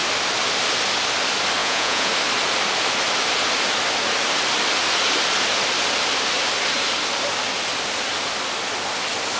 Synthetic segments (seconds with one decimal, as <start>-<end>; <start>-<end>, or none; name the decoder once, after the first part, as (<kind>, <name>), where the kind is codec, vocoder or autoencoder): 1.6-2.1 (vocoder, Vocos)